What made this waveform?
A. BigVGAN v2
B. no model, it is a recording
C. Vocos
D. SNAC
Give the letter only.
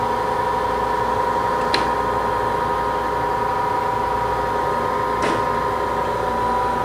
B